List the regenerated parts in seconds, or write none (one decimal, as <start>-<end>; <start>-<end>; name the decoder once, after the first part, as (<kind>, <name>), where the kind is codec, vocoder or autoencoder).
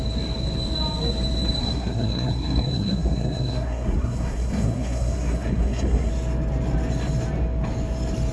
1.6-6.1 (codec, SNAC)